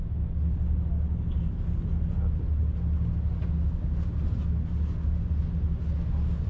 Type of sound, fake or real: real